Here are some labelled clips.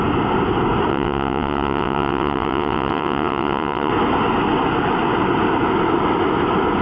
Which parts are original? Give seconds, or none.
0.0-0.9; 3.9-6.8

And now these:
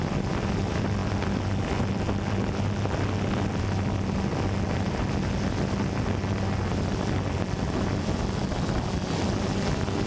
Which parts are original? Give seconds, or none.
0.0-10.1

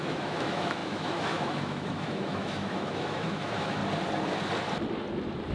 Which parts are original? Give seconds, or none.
3.8-5.5

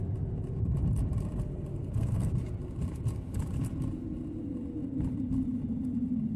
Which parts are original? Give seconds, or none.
0.0-1.7; 2.3-6.4

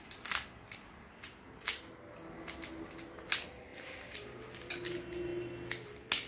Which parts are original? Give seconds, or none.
0.0-6.3

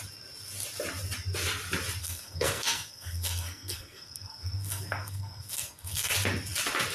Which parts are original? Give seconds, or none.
0.0-2.0; 6.1-6.9